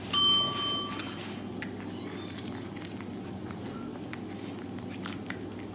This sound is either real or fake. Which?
real